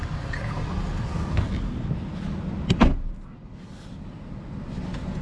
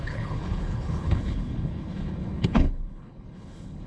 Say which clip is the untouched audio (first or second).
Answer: first